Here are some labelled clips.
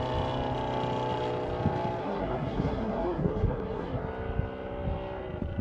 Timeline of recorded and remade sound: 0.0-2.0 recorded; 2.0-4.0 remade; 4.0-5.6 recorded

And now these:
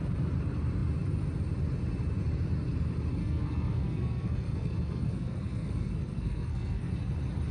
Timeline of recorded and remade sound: 0.0-3.2 recorded; 3.2-6.9 remade; 6.9-7.5 recorded

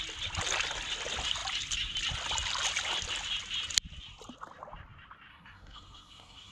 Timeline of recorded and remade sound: 0.0-5.3 recorded; 5.3-6.5 remade